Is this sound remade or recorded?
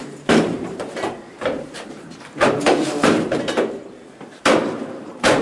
remade